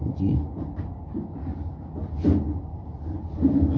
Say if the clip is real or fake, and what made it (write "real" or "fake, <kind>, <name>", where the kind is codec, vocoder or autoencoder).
real